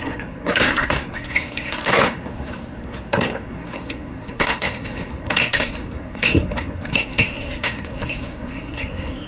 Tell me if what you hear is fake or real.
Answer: fake